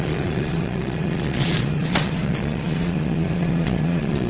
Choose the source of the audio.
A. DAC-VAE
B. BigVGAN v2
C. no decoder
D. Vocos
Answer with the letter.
D